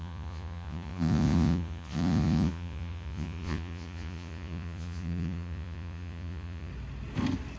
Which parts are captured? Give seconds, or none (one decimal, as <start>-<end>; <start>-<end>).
6.7-7.6